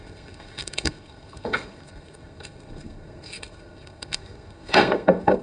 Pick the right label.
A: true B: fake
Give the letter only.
B